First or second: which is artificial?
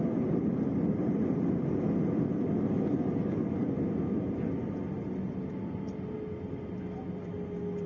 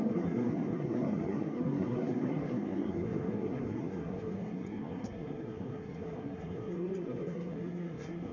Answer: second